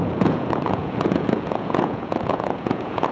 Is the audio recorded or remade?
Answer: remade